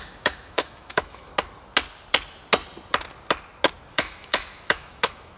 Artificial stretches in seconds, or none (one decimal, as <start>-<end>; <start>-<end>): 0.0-1.3; 3.9-5.4